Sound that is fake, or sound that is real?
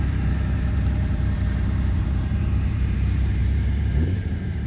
fake